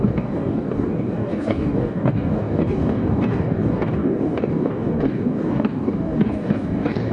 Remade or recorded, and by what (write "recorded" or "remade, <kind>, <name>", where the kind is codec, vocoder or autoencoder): remade, codec, DAC